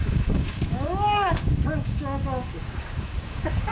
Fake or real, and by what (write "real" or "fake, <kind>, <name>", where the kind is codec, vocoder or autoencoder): fake, codec, DAC